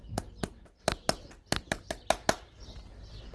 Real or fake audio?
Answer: real